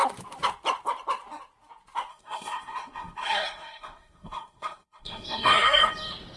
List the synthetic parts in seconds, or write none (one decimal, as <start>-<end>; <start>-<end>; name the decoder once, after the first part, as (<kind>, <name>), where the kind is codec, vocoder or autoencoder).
2.1-5.9 (codec, SNAC)